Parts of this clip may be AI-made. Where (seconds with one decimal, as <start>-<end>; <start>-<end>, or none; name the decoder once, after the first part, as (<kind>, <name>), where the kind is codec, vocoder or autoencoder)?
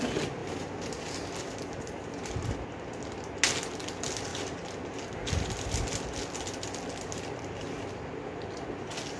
4.3-5.0 (vocoder, BigVGAN v2)